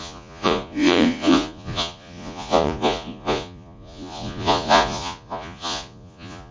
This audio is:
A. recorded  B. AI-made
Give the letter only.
B